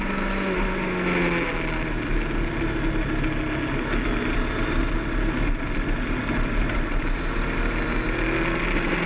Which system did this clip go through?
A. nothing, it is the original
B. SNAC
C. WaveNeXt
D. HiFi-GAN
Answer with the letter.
A